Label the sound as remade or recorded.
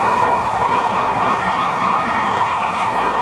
remade